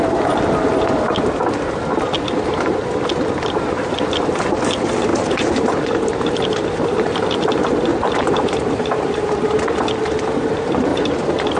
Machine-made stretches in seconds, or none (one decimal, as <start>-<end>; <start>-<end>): 5.1-7.2; 7.9-9.4; 10.9-11.6